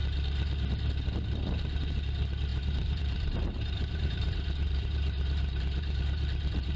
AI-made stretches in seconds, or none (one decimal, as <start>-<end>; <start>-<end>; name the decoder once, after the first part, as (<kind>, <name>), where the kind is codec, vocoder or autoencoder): 2.5-6.8 (vocoder, BigVGAN v2)

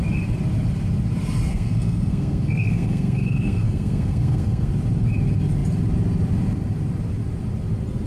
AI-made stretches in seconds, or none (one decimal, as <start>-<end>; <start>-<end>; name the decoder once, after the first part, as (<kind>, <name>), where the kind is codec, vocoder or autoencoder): 1.5-4.7 (codec, SNAC)